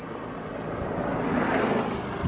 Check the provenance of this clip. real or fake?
real